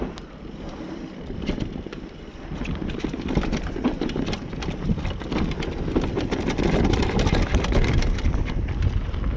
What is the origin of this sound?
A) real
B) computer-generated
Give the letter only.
A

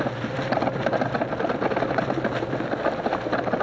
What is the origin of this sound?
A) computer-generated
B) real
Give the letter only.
B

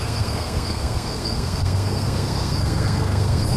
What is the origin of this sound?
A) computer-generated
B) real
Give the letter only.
A